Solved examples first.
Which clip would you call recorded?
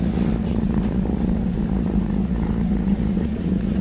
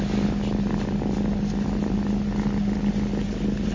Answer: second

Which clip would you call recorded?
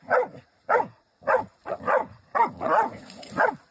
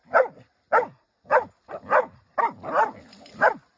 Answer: second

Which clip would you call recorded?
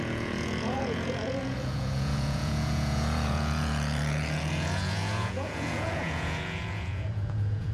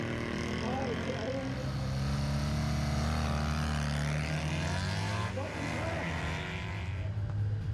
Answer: second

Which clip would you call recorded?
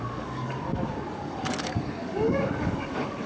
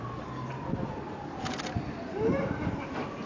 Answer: second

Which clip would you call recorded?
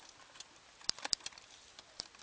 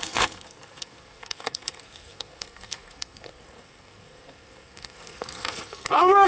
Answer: first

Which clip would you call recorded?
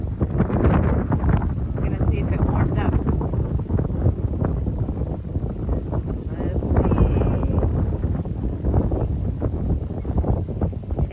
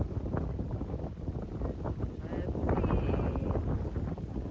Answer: second